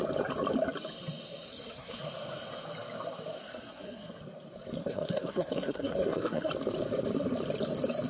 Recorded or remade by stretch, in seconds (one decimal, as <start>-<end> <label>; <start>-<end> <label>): 0.0-1.5 recorded; 1.5-2.0 remade; 2.0-3.4 recorded; 3.4-4.2 remade; 4.2-4.8 recorded; 4.8-6.5 remade; 6.5-8.1 recorded